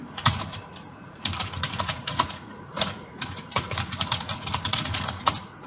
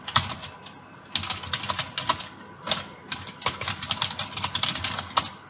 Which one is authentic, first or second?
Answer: second